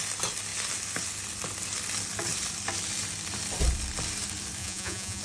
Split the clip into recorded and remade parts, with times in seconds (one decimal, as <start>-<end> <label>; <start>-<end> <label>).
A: 0.0-4.6 recorded; 4.6-5.2 remade